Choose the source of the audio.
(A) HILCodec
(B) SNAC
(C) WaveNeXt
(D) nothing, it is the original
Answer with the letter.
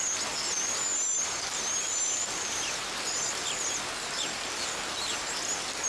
D